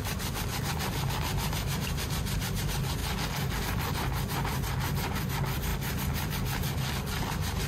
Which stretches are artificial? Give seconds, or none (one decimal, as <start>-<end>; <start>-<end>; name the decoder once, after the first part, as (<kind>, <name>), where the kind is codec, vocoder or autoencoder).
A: none